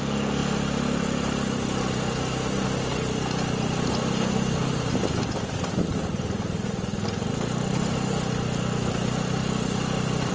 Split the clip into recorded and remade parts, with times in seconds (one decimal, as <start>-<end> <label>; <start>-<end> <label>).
0.0-10.3 recorded